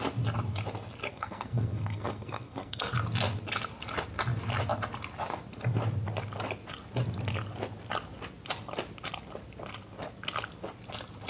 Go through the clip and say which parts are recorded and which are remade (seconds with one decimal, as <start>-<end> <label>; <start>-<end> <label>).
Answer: 0.0-1.1 recorded; 1.1-2.8 remade; 2.8-11.3 recorded